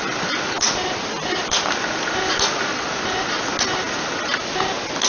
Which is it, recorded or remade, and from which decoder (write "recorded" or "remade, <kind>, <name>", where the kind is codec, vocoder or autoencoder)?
recorded